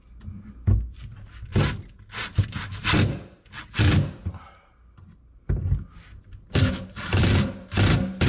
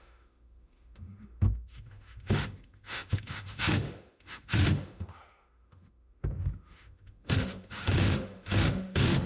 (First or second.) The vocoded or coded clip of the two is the second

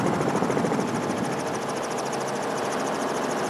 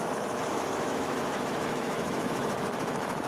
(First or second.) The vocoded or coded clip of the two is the second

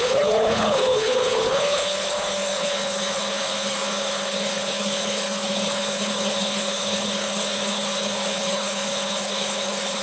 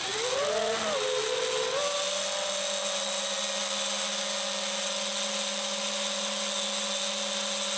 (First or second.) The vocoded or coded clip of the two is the first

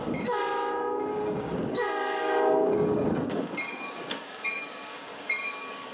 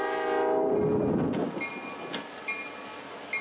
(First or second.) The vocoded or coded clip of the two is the first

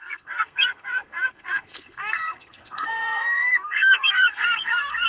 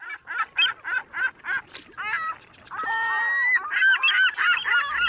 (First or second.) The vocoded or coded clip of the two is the first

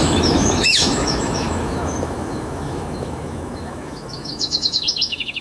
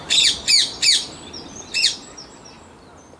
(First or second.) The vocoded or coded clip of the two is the first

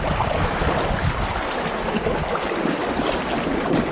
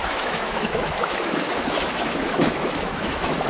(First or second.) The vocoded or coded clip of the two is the second